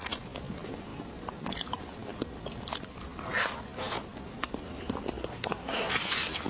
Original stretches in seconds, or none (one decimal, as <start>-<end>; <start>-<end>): 0.0-5.2; 5.9-6.5